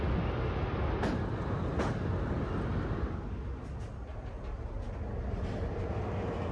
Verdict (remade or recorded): recorded